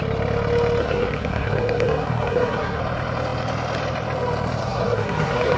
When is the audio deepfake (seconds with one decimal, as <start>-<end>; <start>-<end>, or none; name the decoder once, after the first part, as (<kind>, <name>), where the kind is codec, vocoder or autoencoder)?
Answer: 0.8-2.8 (codec, SNAC); 4.6-5.6